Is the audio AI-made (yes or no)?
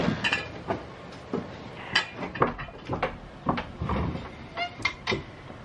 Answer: no